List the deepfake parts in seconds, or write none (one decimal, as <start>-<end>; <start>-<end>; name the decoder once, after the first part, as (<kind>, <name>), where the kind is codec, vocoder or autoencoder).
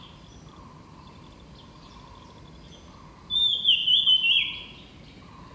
none